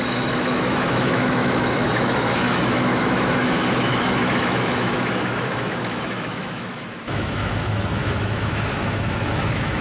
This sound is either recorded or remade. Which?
remade